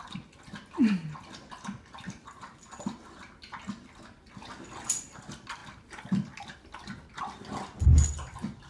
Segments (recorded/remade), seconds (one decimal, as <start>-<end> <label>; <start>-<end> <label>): 0.0-8.7 recorded